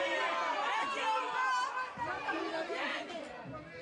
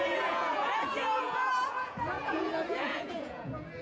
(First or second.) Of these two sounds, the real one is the first